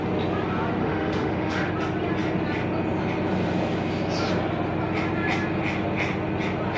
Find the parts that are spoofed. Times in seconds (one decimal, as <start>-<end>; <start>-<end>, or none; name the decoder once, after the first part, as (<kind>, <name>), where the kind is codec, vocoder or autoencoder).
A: 0.8-1.7 (autoencoder, DAC-VAE)